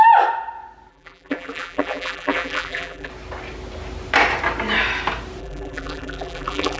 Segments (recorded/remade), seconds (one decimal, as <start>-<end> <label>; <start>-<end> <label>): 0.0-0.9 recorded; 0.9-3.1 remade; 3.1-5.4 recorded; 5.4-6.8 remade